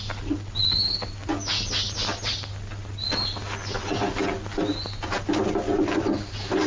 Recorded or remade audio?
recorded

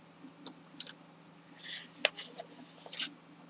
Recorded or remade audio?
recorded